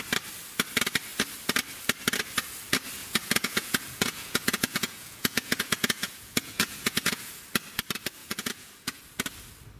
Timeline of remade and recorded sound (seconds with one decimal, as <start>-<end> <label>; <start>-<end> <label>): 0.0-3.0 recorded; 3.0-7.4 remade; 7.4-8.2 recorded; 8.2-9.0 remade; 9.0-9.8 recorded